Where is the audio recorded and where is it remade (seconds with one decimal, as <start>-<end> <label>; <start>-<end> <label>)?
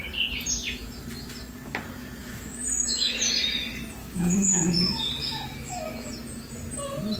0.0-2.2 recorded; 2.2-3.2 remade; 3.2-4.0 recorded; 4.0-4.6 remade; 4.6-5.2 recorded; 5.2-6.1 remade; 6.1-7.2 recorded